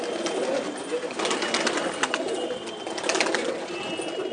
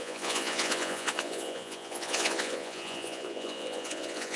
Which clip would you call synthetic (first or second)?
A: second